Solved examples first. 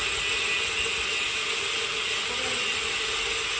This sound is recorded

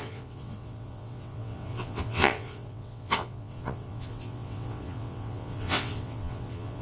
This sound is remade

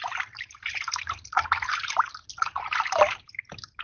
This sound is recorded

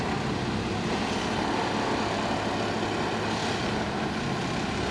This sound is recorded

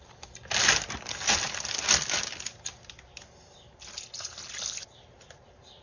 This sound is recorded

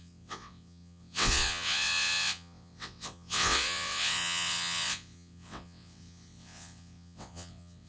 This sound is remade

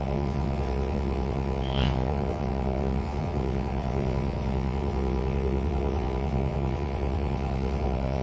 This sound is remade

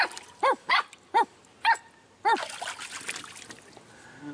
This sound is recorded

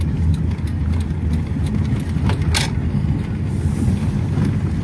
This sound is recorded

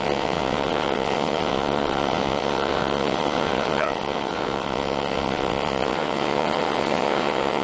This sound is remade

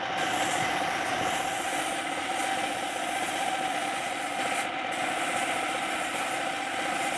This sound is recorded